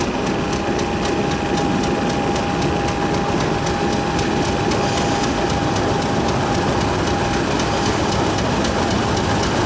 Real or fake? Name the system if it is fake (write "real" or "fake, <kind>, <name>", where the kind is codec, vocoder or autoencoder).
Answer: real